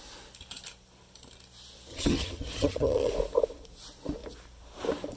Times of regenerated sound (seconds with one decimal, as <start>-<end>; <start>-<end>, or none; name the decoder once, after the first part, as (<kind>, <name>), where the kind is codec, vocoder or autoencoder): 1.9-3.1 (vocoder, HiFi-GAN)